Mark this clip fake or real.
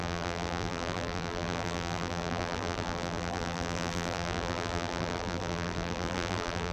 fake